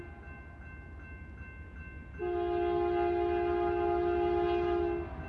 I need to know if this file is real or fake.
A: real